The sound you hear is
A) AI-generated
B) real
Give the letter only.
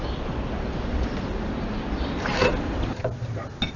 B